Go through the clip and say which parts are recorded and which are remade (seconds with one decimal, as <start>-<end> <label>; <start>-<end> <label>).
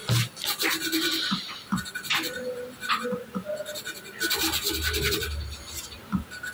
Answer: 0.0-6.5 recorded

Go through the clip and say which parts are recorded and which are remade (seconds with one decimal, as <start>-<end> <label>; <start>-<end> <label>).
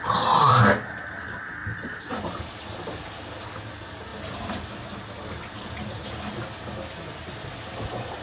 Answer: 0.0-1.6 recorded; 1.6-2.4 remade; 2.4-8.2 recorded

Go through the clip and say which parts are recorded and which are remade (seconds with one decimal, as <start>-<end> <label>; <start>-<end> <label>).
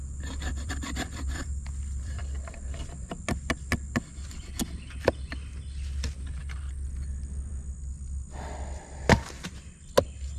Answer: 0.0-2.2 remade; 2.2-10.4 recorded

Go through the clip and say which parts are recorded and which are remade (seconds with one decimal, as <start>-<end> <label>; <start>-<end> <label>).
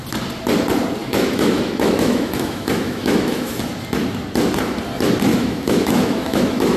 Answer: 0.0-1.0 recorded; 1.0-3.6 remade; 3.6-5.3 recorded; 5.3-6.8 remade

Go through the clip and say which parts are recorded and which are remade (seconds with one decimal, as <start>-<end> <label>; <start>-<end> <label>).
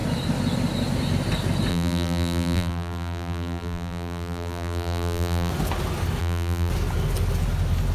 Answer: 0.0-1.7 recorded; 1.7-5.5 remade; 5.5-6.2 recorded; 6.2-6.7 remade; 6.7-7.9 recorded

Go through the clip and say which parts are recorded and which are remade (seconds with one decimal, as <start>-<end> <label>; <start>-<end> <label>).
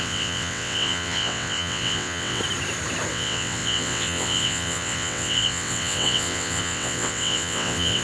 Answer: 0.0-2.4 remade; 2.4-3.1 recorded; 3.1-8.0 remade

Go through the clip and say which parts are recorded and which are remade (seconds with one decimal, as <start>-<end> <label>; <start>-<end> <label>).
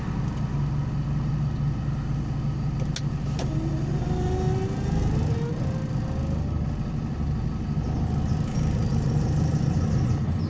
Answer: 0.0-10.5 recorded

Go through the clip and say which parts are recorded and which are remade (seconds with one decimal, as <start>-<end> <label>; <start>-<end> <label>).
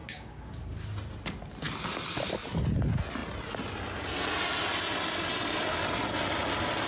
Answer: 0.0-0.6 remade; 0.6-6.9 recorded